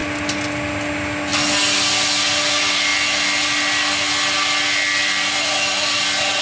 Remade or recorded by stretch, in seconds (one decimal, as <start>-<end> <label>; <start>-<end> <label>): 0.0-6.4 recorded